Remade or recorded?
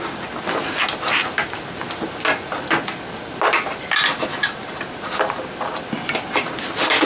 recorded